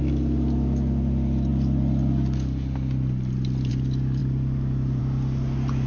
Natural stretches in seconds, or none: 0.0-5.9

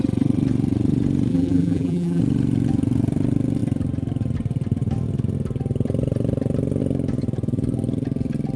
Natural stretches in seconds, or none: 0.0-1.3; 2.2-8.6

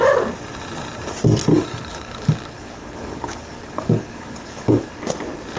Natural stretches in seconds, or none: 0.0-1.5; 4.9-5.6